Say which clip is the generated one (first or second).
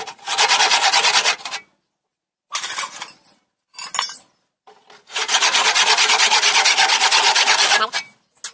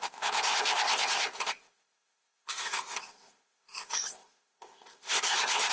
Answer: second